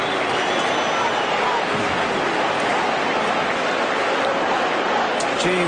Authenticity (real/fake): real